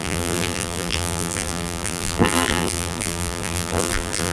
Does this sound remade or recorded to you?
remade